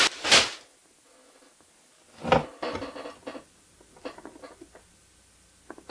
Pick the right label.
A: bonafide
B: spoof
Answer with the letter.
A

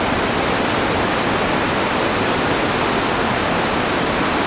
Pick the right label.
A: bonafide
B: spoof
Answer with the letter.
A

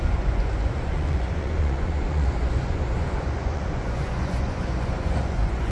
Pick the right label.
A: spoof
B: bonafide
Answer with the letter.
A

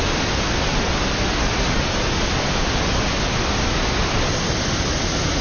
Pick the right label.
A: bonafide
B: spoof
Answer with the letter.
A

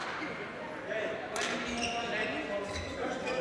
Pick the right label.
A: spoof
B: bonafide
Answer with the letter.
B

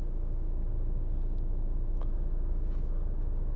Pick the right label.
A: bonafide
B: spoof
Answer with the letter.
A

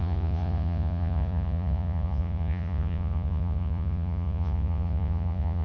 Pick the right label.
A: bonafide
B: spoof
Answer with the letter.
B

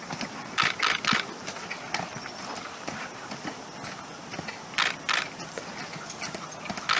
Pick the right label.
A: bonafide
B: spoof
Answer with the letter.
A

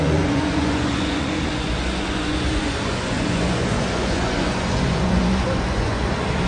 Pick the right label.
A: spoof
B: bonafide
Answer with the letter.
A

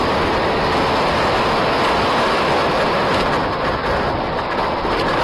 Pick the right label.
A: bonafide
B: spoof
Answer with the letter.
A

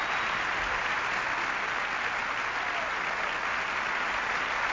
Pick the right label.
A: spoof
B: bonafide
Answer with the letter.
B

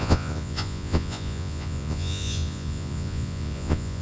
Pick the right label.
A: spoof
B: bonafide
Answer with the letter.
A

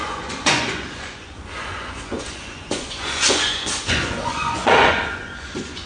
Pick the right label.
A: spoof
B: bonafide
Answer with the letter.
A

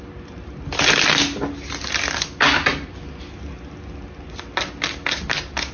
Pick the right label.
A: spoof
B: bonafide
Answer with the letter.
B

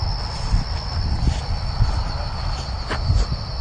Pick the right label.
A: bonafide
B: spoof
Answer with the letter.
A